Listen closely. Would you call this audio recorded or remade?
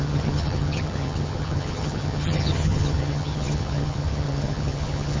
remade